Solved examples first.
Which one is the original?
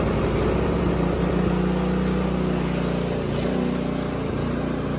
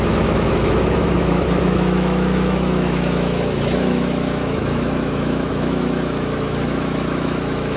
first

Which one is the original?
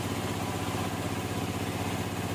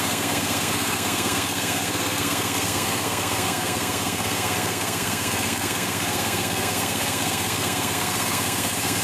first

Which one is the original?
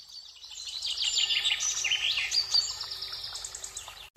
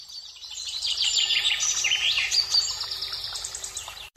first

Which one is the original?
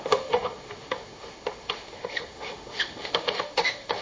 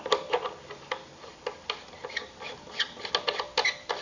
second